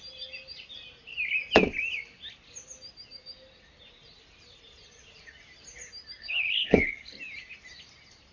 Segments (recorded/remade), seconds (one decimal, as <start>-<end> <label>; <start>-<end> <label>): 0.0-6.2 recorded; 6.2-7.1 remade; 7.1-8.3 recorded